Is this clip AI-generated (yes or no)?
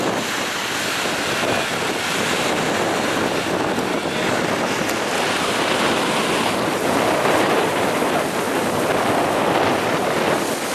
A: no